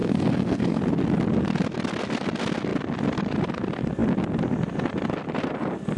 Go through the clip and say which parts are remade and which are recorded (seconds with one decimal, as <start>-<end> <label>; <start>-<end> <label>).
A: 0.0-0.8 remade; 0.8-6.0 recorded